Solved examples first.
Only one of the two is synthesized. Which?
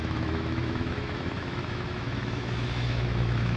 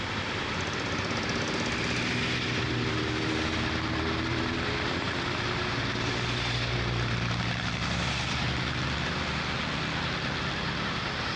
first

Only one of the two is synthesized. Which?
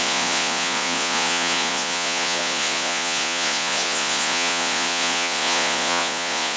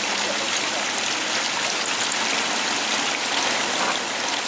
first